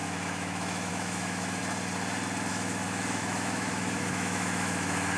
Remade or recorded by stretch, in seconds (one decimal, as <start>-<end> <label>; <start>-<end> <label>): 0.0-1.6 remade; 1.6-2.5 recorded; 2.5-5.2 remade